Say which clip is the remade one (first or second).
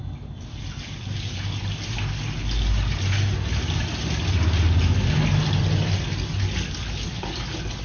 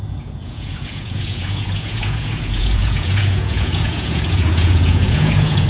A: second